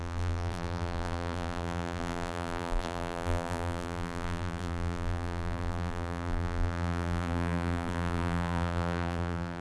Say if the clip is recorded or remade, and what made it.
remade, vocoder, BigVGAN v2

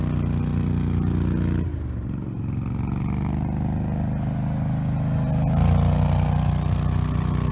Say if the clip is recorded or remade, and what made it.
recorded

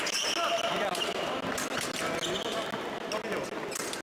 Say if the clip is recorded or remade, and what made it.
recorded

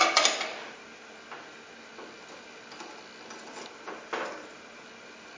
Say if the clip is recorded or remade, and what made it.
recorded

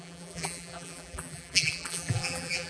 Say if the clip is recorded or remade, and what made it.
remade, vocoder, BigVGAN v2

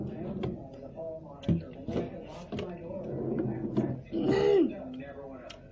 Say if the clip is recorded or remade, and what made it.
recorded